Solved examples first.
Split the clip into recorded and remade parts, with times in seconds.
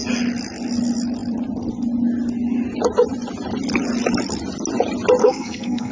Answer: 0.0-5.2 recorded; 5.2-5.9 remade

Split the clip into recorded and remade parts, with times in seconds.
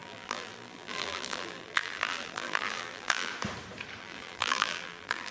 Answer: 0.0-3.3 remade; 3.3-4.0 recorded; 4.0-5.3 remade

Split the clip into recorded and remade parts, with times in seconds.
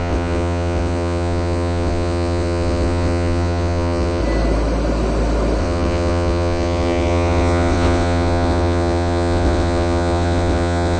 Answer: 0.0-4.2 remade; 4.2-5.6 recorded; 5.6-11.0 remade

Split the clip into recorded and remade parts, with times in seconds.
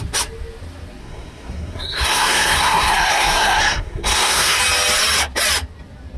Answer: 0.0-1.0 recorded; 1.0-4.6 remade; 4.6-6.2 recorded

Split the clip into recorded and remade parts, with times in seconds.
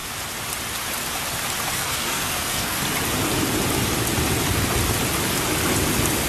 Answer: 0.0-1.7 recorded; 1.7-2.8 remade; 2.8-6.3 recorded